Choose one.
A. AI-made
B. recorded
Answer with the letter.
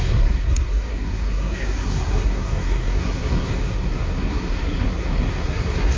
A